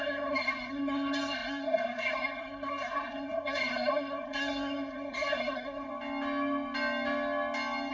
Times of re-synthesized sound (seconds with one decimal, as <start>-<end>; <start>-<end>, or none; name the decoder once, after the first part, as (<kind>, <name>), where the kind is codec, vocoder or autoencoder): 0.0-5.9 (codec, SNAC)